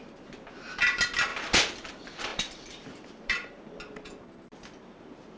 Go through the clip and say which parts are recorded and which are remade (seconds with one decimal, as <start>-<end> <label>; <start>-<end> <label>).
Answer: 0.0-2.3 recorded; 2.3-3.6 remade; 3.6-5.4 recorded